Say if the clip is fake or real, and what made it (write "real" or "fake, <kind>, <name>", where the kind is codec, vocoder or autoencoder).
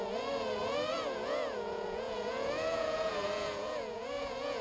fake, vocoder, Vocos